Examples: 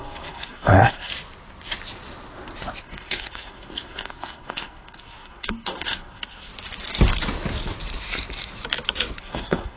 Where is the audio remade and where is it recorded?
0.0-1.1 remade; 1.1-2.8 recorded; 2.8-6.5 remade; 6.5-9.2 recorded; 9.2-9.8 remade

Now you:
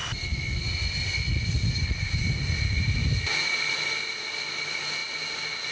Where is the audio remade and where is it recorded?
0.0-0.6 remade; 0.6-5.0 recorded; 5.0-5.7 remade

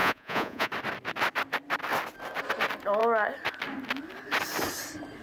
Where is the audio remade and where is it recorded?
0.0-0.7 remade; 0.7-5.2 recorded

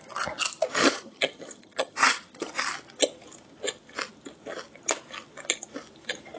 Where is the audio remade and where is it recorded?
0.0-0.8 recorded; 0.8-2.5 remade; 2.5-6.4 recorded